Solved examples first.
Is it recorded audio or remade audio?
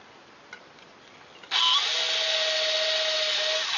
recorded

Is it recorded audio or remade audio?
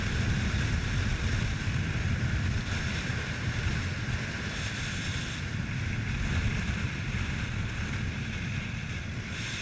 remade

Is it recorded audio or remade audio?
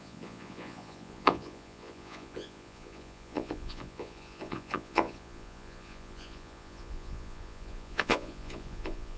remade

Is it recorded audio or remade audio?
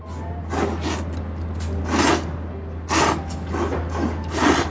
recorded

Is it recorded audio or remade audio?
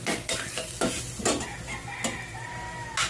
recorded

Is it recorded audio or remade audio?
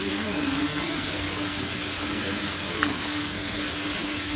remade